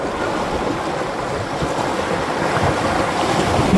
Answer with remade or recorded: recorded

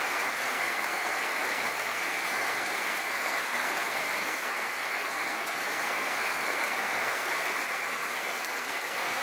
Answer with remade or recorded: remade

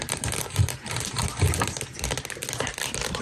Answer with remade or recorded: remade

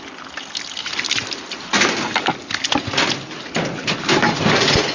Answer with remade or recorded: recorded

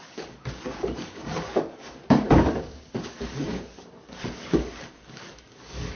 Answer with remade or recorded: remade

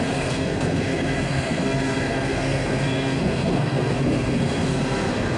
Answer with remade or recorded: remade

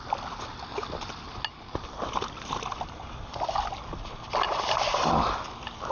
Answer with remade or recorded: recorded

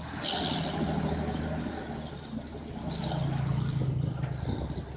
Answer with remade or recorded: recorded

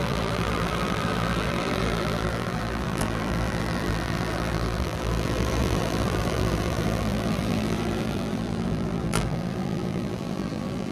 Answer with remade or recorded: remade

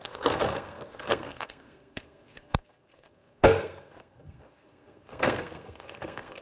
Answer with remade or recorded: remade